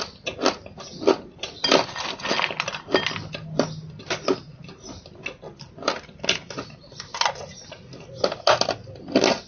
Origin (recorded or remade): recorded